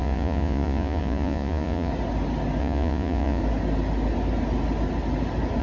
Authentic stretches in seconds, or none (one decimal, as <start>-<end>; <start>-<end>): 1.9-2.6; 3.4-5.6